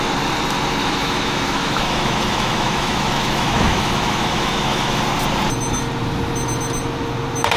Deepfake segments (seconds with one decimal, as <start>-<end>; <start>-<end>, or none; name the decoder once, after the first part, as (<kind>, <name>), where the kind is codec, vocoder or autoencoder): 0.8-5.0 (autoencoder, DAC-VAE)